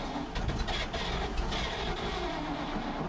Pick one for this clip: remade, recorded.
recorded